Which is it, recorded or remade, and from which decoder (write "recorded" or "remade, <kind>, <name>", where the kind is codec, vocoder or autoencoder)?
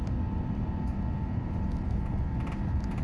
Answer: recorded